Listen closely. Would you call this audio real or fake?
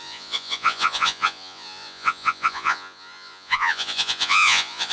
fake